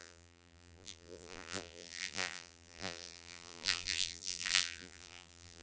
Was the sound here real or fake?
fake